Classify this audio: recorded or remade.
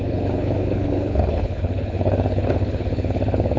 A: remade